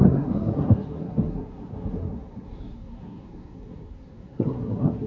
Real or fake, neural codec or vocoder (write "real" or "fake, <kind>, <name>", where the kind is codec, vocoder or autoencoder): fake, codec, SNAC